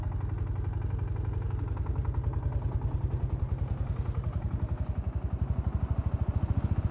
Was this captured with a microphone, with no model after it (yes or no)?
yes